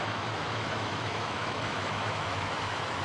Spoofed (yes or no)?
yes